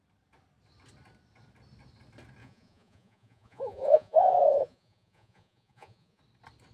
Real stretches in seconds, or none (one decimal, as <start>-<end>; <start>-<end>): 0.0-2.4; 6.2-6.7